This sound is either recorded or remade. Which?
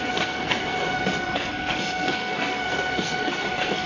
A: remade